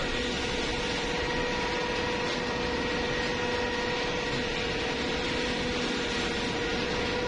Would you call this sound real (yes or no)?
yes